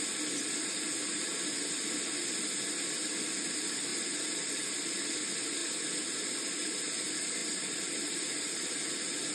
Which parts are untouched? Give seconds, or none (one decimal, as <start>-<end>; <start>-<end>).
0.0-3.9; 4.7-7.4; 8.9-9.3